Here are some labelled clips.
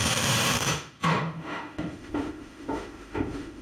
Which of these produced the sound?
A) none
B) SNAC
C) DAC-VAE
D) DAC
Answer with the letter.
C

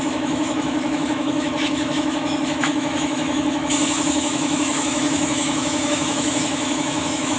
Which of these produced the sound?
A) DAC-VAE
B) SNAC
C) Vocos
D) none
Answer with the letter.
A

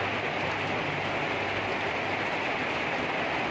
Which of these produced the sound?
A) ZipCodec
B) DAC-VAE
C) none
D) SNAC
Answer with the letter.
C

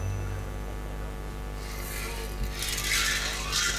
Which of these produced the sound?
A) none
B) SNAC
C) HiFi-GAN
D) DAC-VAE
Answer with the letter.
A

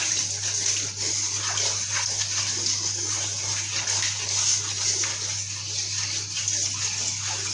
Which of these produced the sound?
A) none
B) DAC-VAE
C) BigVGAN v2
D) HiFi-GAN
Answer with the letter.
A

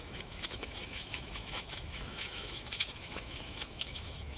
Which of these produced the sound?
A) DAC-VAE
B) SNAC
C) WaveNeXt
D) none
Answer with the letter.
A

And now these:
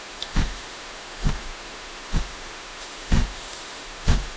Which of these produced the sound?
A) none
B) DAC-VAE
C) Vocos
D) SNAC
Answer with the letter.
B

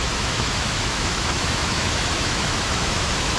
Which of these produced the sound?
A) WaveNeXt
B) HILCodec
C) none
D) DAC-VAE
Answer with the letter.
D